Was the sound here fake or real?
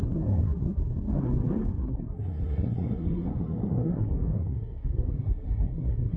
fake